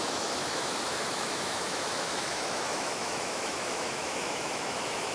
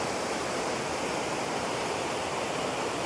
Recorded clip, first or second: second